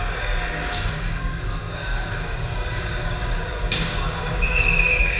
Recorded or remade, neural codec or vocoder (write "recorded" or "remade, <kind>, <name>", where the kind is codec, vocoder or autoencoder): remade, codec, DAC